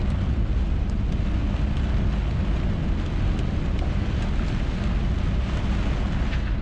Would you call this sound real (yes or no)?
yes